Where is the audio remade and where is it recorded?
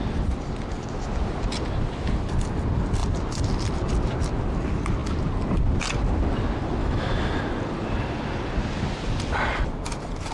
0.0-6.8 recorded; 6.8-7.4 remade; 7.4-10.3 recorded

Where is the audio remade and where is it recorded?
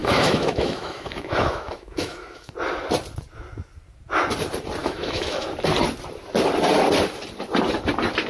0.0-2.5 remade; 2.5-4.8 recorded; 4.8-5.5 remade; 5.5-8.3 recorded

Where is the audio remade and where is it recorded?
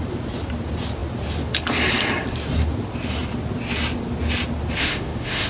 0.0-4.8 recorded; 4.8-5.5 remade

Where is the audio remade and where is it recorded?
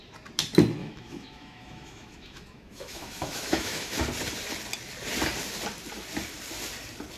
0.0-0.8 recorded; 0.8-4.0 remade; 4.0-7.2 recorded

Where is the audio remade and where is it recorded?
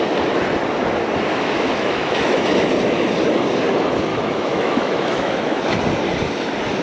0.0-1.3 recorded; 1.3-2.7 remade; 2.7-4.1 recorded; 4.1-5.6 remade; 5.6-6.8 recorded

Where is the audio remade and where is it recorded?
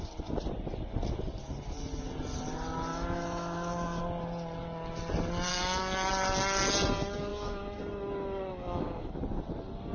0.0-2.9 recorded; 2.9-4.0 remade; 4.0-5.5 recorded; 5.5-6.1 remade; 6.1-7.3 recorded; 7.3-7.8 remade; 7.8-8.5 recorded; 8.5-9.2 remade; 9.2-9.9 recorded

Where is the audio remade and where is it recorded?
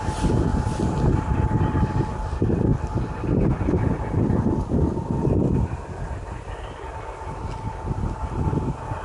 0.0-9.0 recorded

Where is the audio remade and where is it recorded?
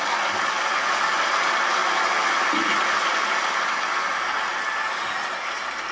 0.0-5.9 recorded